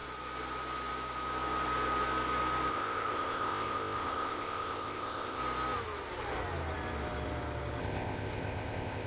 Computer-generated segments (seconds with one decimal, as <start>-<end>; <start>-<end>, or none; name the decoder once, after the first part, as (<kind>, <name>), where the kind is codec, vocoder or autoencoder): 2.7-5.4 (codec, ZipCodec); 7.8-9.1